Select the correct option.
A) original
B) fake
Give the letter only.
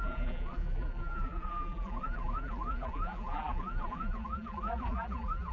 B